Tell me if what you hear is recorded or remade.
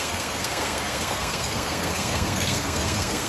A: remade